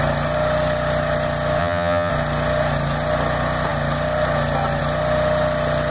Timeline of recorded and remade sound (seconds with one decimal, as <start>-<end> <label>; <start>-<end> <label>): 0.0-1.6 recorded; 1.6-2.1 remade; 2.1-5.9 recorded